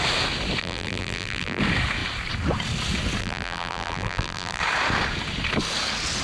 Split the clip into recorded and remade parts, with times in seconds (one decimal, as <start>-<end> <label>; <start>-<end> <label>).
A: 0.0-0.6 recorded; 0.6-1.6 remade; 1.6-3.2 recorded; 3.2-4.6 remade; 4.6-6.2 recorded